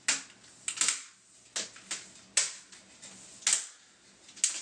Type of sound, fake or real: real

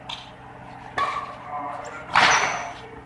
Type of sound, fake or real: real